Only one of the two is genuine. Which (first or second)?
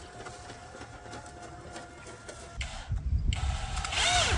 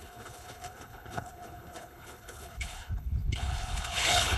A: first